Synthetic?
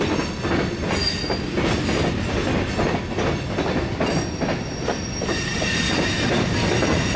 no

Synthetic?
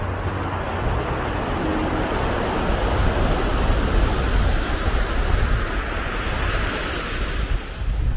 no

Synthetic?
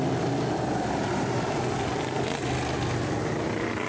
no